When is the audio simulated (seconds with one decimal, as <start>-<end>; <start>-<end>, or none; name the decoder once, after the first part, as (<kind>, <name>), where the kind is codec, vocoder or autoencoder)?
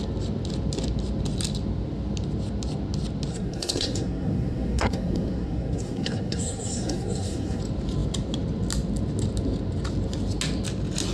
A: 3.3-7.6 (codec, SNAC)